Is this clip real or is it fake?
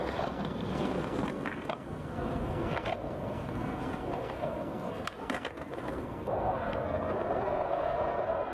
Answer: fake